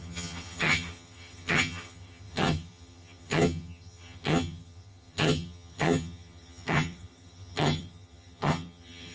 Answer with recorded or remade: remade